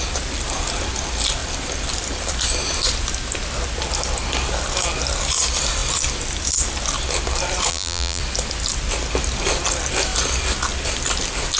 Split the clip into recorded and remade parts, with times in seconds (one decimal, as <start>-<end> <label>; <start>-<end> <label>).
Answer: 0.0-7.7 recorded; 7.7-8.2 remade; 8.2-11.6 recorded

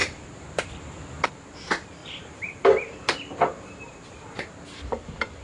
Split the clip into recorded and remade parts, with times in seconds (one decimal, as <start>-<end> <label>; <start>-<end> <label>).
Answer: 0.0-0.7 remade; 0.7-2.0 recorded; 2.0-4.3 remade; 4.3-5.4 recorded

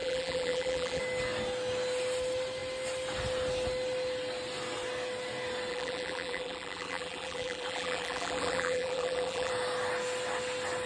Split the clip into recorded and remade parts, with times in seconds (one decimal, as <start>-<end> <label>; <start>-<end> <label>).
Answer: 0.0-1.0 remade; 1.0-5.7 recorded; 5.7-9.5 remade; 9.5-10.9 recorded

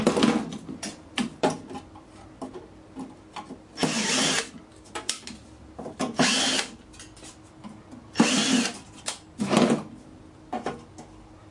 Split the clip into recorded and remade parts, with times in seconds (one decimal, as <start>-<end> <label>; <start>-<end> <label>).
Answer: 0.0-11.5 recorded

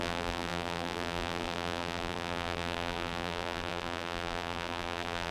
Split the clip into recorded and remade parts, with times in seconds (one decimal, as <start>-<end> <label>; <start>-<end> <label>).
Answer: 0.0-5.3 remade

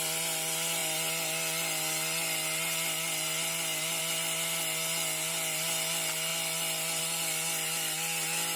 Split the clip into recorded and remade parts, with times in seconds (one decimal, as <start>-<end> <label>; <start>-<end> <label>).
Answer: 0.0-8.6 recorded